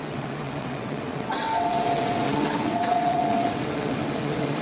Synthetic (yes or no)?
yes